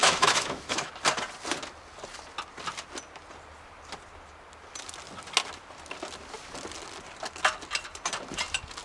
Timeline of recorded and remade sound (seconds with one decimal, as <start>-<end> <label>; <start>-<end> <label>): 0.0-0.9 remade; 0.9-8.8 recorded